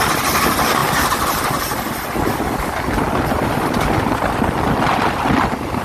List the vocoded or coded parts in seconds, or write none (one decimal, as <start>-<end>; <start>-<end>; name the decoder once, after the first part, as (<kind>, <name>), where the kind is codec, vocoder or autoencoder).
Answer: none